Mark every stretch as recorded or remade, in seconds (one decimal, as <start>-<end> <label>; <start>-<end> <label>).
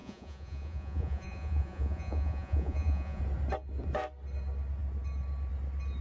0.0-3.2 remade; 3.2-6.0 recorded